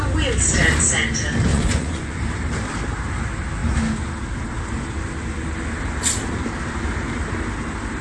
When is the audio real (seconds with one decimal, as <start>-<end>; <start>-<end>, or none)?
0.0-1.5; 2.2-8.0